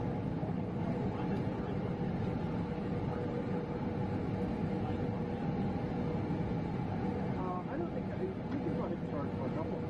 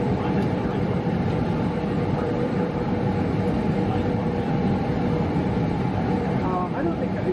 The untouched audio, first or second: first